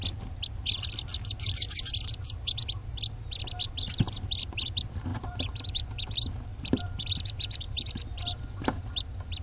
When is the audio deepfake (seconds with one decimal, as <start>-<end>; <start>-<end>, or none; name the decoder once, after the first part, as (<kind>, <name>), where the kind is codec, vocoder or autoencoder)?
1.1-1.9 (vocoder, BigVGAN v2); 5.1-6.8